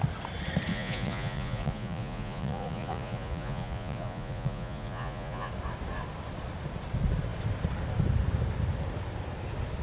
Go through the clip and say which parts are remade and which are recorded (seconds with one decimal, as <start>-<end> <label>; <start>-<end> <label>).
0.0-0.7 recorded; 0.7-5.5 remade; 5.5-9.8 recorded